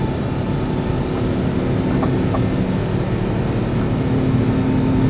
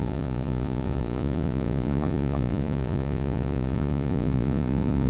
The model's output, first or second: second